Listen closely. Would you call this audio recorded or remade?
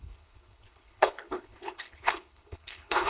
remade